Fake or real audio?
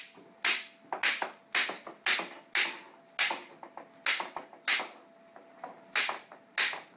real